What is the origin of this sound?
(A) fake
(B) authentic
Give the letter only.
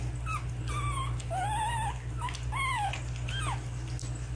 B